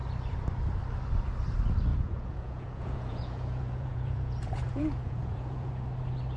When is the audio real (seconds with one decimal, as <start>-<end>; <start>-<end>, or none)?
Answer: 0.0-1.9; 5.7-6.4